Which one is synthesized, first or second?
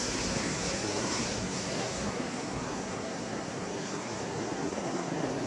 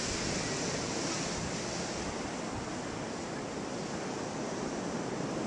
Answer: first